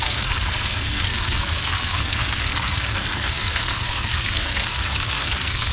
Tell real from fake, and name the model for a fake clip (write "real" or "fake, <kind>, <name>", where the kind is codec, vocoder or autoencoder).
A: fake, codec, SNAC